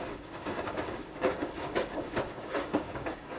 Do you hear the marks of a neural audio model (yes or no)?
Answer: yes